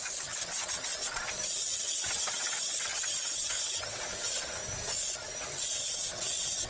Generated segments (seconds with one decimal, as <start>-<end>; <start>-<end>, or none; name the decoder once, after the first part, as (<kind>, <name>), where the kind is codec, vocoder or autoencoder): 0.0-0.9 (vocoder, WaveNeXt); 1.6-2.9; 3.6-4.6; 5.5-6.7